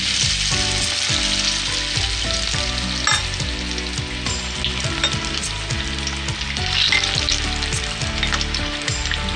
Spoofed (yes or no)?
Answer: no